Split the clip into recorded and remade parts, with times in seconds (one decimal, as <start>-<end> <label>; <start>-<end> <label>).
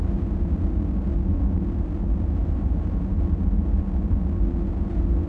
0.0-5.3 recorded